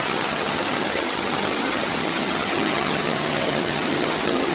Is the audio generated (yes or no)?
yes